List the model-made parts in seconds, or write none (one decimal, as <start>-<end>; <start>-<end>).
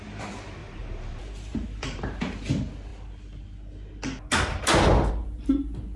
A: 0.6-2.2